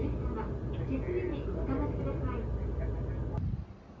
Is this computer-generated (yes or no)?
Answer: no